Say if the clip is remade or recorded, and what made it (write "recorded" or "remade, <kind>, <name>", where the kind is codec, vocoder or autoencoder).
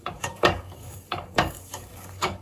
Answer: remade, codec, DAC